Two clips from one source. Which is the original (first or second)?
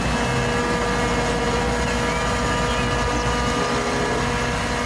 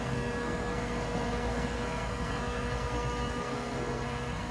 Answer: first